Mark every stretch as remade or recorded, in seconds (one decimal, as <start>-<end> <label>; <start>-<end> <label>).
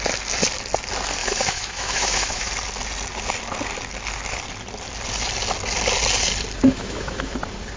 0.0-1.2 recorded; 1.2-2.5 remade; 2.5-6.6 recorded; 6.6-7.3 remade; 7.3-7.8 recorded